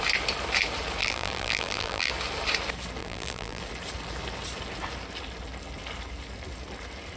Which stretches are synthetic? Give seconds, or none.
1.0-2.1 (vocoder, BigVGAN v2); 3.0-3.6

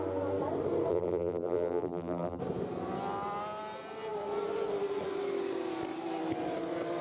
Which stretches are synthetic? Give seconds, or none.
0.9-2.4 (vocoder, BigVGAN v2)

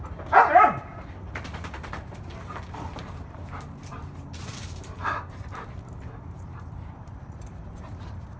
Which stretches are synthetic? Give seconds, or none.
3.0-7.9 (vocoder, BigVGAN v2)

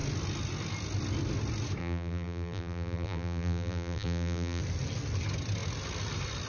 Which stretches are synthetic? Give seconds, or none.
1.8-4.6 (vocoder, BigVGAN v2)

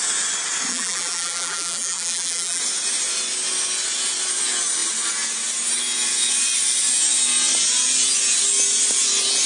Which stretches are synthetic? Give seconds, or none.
0.7-2.6 (vocoder, BigVGAN v2)